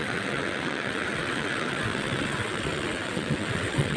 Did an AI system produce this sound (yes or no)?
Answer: yes